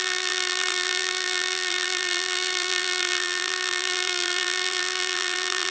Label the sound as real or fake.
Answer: fake